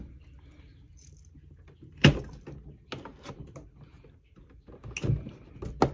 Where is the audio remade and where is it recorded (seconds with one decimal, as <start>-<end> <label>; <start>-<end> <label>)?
0.0-5.9 recorded